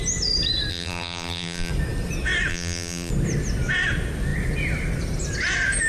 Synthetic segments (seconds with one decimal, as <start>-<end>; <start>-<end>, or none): 0.7-1.7; 2.5-3.1